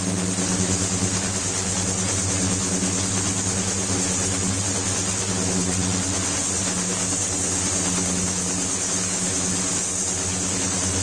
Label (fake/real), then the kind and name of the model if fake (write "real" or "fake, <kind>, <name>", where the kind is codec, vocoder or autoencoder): real